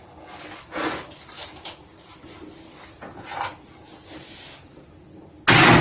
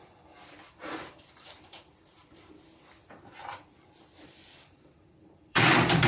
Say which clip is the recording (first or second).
first